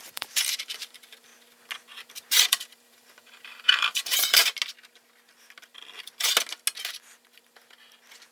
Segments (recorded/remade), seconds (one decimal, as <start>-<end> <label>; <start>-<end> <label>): 0.0-1.3 remade; 1.3-2.5 recorded; 2.5-4.4 remade; 4.4-8.3 recorded